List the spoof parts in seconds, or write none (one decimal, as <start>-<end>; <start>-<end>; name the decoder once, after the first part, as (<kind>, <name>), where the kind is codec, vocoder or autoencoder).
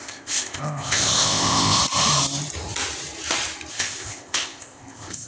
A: 0.0-1.8 (codec, ZipCodec); 3.7-5.3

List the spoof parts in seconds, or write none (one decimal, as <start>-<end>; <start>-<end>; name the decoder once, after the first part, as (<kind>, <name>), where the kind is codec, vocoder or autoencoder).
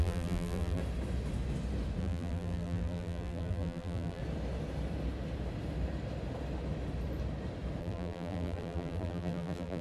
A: 0.0-0.8 (vocoder, BigVGAN v2); 2.0-4.2; 7.8-9.8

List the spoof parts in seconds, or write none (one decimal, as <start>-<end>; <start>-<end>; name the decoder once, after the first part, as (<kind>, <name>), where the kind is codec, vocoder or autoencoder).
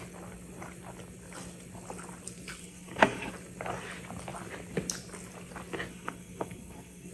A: 2.6-3.3 (codec, SNAC); 5.9-7.1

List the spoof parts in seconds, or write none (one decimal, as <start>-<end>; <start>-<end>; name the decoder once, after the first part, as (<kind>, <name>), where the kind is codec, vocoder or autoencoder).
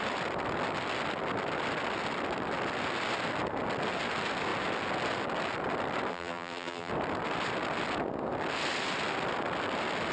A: 6.1-6.9 (vocoder, BigVGAN v2)